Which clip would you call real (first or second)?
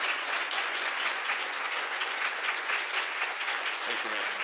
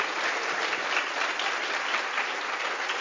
second